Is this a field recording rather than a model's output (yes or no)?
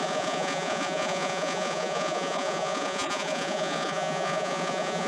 no